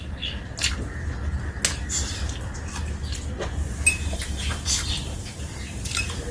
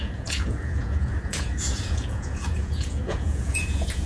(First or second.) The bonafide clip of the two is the first